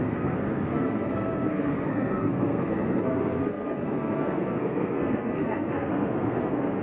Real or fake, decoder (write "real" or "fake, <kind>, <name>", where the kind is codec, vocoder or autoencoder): fake, codec, SNAC